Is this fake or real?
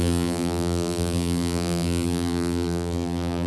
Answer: fake